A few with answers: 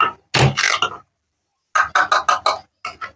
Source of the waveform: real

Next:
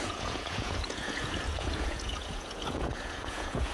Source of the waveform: fake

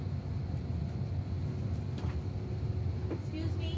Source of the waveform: real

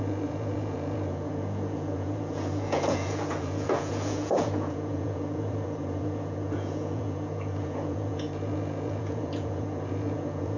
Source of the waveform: fake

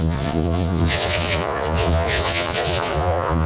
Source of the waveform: fake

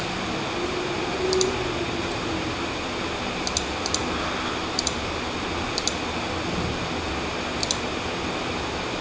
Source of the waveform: real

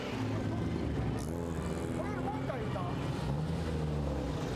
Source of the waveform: real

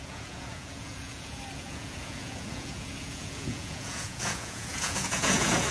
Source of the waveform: fake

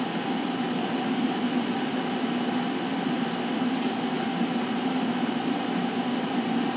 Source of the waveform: real